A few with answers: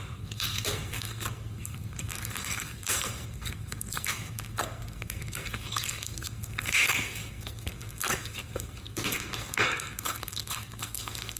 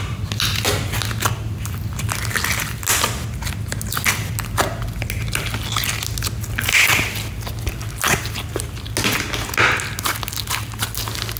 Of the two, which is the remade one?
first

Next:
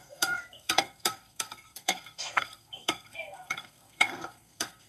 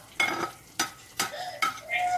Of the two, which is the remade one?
first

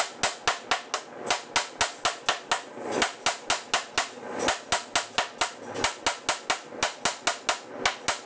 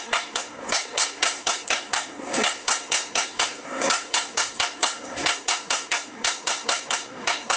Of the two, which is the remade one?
second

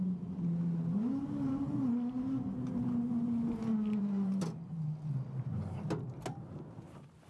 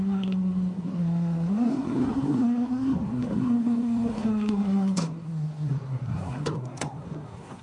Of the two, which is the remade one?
second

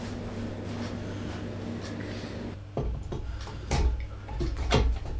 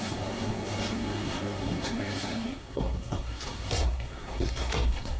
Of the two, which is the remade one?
second